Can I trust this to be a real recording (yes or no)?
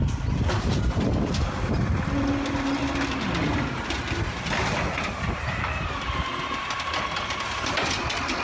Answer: yes